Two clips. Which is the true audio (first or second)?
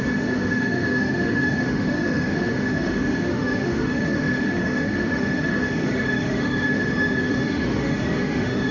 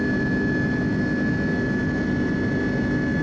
second